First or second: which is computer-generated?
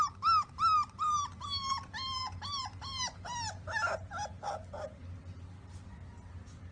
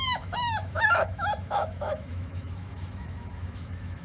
second